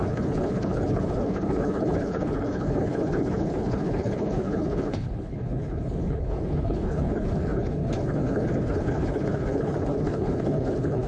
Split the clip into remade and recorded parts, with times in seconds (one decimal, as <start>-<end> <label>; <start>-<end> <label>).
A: 0.0-11.1 remade